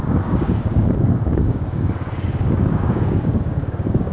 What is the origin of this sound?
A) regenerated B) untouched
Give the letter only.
A